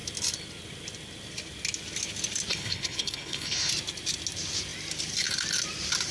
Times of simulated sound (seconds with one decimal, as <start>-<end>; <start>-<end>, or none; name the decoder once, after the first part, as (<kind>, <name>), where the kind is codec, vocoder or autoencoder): 2.5-3.7 (codec, HILCodec)